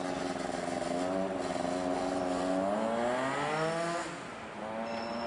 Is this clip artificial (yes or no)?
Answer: no